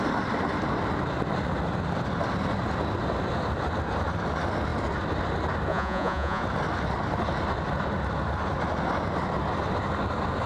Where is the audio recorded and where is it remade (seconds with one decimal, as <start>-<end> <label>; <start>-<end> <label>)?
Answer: 0.0-5.7 recorded; 5.7-6.4 remade; 6.4-10.5 recorded